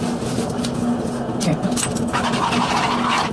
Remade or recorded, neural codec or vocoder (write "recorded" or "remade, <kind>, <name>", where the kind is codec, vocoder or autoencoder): recorded